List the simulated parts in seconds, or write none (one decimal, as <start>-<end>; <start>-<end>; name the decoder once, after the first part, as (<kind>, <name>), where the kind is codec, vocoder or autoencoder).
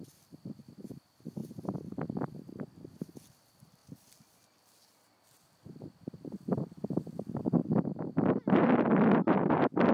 none